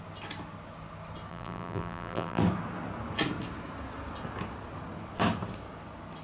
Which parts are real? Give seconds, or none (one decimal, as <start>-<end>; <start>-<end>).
0.0-1.3; 2.4-6.2